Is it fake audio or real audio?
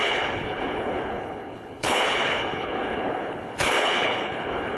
fake